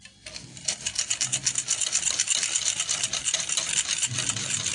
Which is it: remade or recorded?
recorded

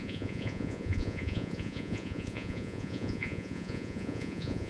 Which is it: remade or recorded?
remade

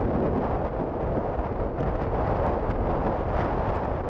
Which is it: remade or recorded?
recorded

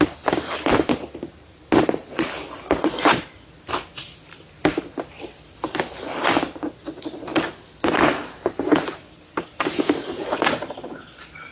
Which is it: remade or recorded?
recorded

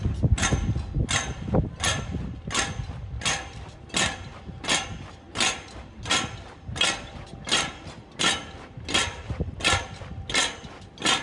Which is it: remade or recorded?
recorded